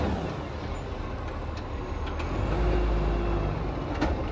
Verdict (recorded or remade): recorded